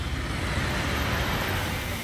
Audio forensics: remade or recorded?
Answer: recorded